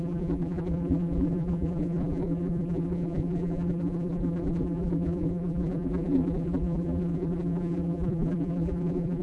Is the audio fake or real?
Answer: fake